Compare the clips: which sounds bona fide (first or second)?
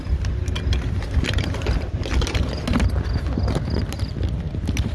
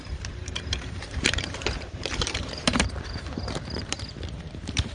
first